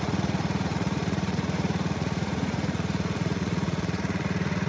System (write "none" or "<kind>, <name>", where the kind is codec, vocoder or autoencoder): vocoder, Vocos